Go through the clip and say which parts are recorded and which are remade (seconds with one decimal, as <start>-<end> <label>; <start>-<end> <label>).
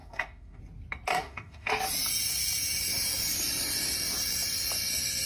0.0-0.6 remade; 0.6-1.1 recorded; 1.1-1.7 remade; 1.7-5.3 recorded